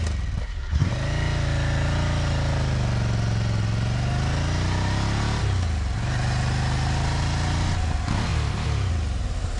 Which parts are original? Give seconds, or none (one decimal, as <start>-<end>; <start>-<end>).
0.0-0.4; 0.9-9.6